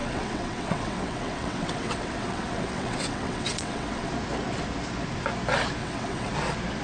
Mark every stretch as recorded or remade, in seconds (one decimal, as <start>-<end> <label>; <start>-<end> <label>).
0.0-4.1 remade; 4.1-5.8 recorded; 5.8-6.3 remade; 6.3-6.8 recorded